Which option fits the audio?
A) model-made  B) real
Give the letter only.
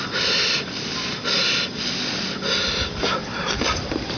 B